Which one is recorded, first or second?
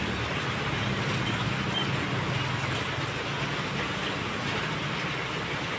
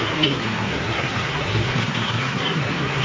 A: first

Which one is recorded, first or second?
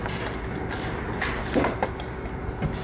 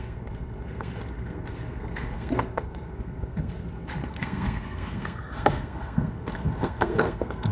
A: first